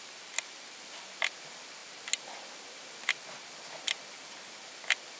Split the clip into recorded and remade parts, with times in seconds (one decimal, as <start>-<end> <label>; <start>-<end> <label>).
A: 0.0-5.2 recorded